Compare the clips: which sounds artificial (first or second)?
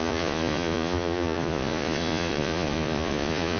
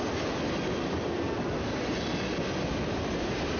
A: first